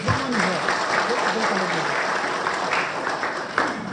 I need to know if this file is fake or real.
real